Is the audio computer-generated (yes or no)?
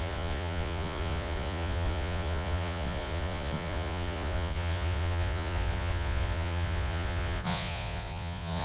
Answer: yes